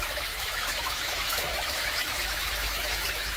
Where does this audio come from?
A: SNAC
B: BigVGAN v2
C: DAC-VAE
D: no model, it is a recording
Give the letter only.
C